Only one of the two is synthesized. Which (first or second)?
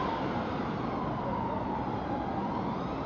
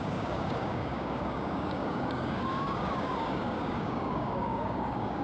second